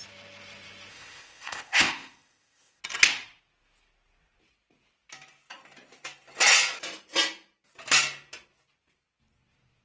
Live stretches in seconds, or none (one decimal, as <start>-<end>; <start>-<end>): 0.0-0.9; 2.8-9.8